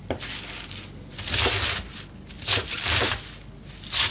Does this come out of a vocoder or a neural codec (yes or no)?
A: no